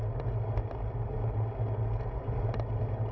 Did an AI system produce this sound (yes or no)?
no